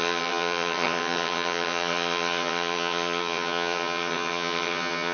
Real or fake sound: fake